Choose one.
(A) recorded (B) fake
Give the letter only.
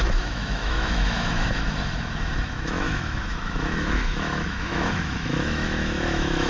B